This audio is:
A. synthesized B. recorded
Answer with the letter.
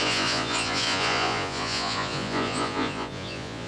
A